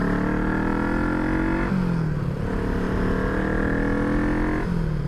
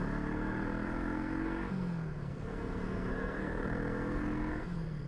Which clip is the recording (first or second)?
first